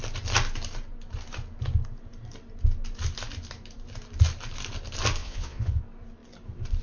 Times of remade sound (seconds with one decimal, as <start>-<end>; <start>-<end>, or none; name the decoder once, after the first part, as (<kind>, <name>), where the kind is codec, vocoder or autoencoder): 5.2-5.8 (vocoder, Vocos)